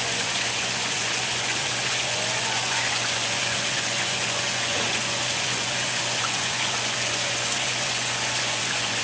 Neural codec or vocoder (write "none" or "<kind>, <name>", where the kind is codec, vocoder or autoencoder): vocoder, Vocos